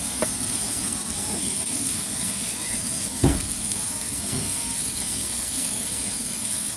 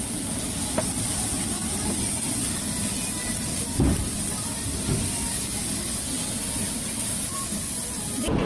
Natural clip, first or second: second